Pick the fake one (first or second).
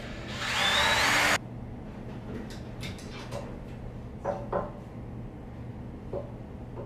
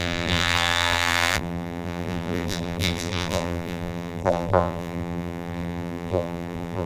second